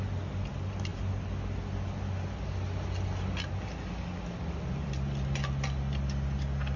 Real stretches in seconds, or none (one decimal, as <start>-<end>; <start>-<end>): 0.0-6.8